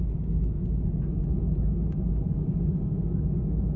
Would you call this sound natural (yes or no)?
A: yes